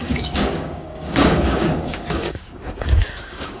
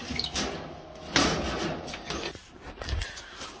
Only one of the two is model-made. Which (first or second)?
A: first